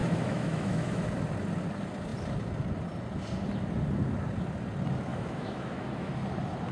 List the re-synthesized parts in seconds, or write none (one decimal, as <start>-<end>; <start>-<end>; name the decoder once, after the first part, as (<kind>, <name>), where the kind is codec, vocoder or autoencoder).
0.0-1.1 (autoencoder, DAC-VAE); 5.1-6.1

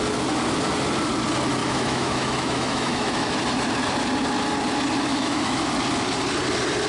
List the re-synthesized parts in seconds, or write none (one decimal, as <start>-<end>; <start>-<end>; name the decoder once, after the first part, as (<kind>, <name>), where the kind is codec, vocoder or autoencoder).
1.6-3.4 (autoencoder, DAC-VAE); 5.1-5.7

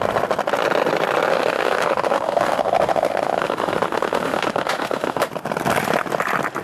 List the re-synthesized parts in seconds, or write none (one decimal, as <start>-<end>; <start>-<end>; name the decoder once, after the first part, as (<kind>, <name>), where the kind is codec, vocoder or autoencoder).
1.3-5.3 (autoencoder, DAC-VAE)

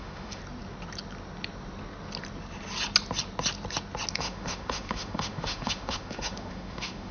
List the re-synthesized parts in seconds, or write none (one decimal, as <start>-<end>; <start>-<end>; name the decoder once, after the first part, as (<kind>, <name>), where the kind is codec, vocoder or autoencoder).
0.0-0.4 (autoencoder, DAC-VAE); 4.1-7.1

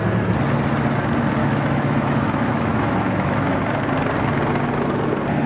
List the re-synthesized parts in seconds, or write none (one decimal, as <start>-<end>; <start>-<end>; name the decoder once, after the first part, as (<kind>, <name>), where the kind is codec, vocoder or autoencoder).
1.4-3.5 (autoencoder, DAC-VAE)

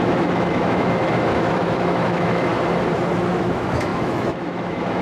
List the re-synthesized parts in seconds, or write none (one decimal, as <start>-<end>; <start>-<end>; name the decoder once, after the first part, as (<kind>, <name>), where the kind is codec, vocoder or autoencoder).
0.0-2.5 (autoencoder, DAC-VAE); 3.3-5.0